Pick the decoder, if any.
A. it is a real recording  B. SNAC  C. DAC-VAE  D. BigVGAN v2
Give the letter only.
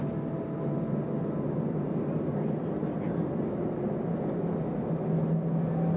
A